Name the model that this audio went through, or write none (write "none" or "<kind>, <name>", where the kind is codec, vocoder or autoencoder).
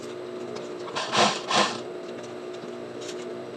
none